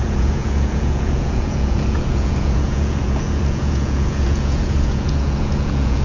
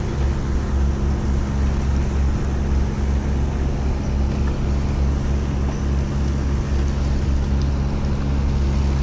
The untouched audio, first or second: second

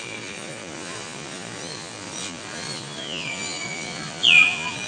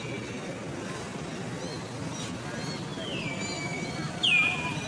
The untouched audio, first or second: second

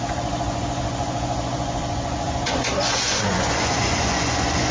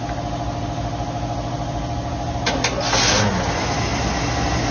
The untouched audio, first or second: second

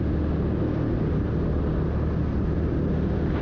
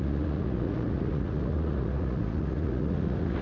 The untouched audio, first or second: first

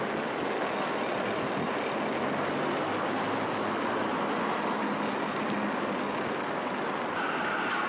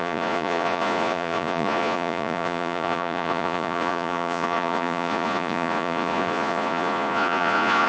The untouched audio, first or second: first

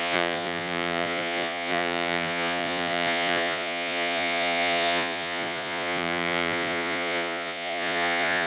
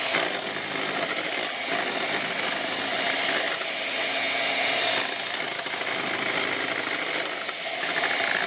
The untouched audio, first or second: second